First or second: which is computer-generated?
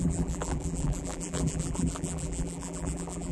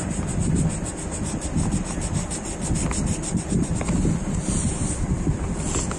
first